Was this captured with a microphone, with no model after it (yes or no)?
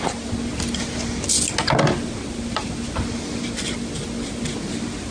yes